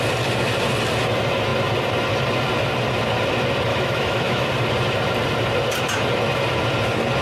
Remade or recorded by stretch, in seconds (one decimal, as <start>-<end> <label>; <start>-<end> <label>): 0.0-3.7 recorded; 3.7-4.5 remade; 4.5-7.2 recorded

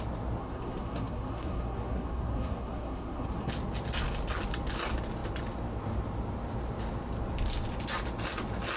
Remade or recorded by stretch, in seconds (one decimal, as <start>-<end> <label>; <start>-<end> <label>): 0.0-0.4 recorded; 0.4-3.5 remade; 3.5-8.8 recorded

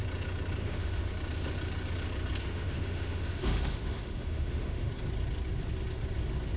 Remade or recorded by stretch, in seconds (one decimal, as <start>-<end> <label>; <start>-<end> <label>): 0.0-0.6 recorded; 0.6-1.1 remade; 1.1-2.4 recorded; 2.4-4.9 remade; 4.9-6.6 recorded